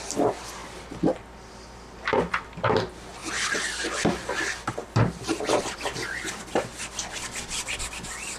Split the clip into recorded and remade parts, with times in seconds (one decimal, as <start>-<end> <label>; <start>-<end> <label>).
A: 0.0-8.4 recorded